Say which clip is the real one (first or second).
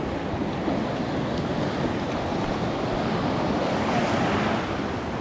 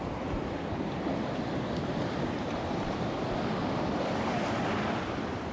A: first